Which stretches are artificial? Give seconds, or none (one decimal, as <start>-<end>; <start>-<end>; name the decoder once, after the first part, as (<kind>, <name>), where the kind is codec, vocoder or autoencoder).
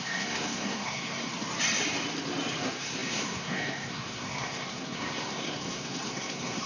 0.0-1.3 (codec, SNAC); 2.6-6.7